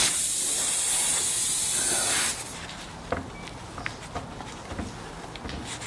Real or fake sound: real